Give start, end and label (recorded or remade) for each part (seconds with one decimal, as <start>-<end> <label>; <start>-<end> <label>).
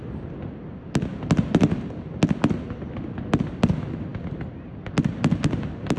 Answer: 0.0-6.0 recorded